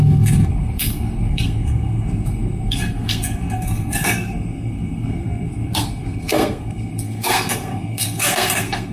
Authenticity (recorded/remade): remade